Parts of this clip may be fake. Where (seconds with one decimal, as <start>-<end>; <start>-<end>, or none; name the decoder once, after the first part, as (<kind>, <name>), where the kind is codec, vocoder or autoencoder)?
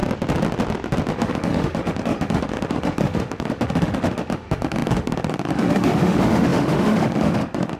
1.1-7.8 (autoencoder, DAC-VAE)